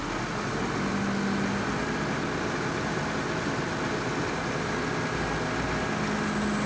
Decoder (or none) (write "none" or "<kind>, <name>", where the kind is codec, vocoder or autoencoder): none